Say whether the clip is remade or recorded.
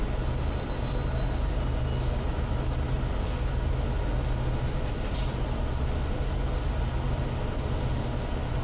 recorded